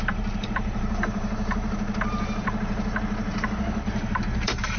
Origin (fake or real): fake